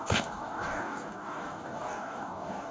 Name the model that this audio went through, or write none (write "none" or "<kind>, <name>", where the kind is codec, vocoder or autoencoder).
codec, DAC